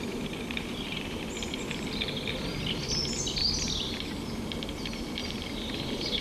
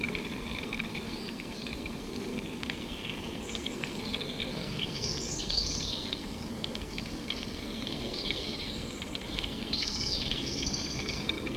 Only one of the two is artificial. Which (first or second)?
second